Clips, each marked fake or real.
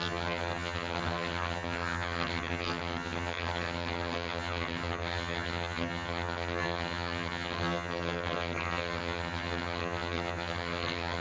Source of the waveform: fake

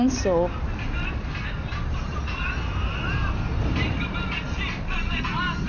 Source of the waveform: real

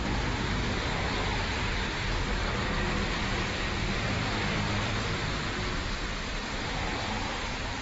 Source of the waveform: fake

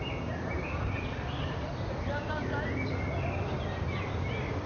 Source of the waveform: real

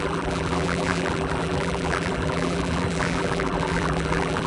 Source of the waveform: fake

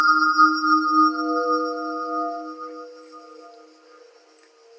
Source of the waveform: real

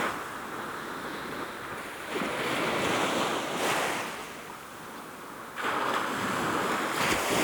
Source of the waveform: real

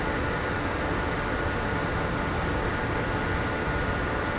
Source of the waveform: real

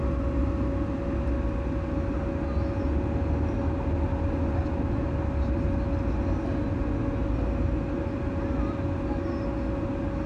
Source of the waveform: real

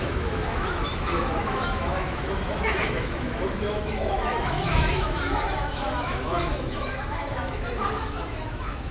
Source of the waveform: fake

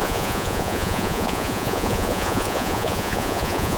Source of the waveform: fake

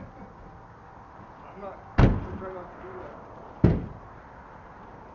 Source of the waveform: real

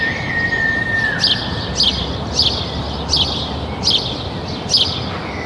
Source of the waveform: real